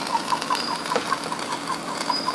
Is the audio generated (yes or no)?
no